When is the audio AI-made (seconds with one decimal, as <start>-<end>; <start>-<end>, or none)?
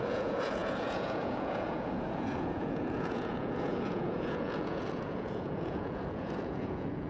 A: 0.0-7.1